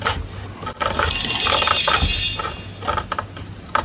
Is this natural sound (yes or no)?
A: yes